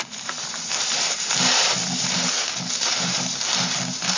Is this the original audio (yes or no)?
yes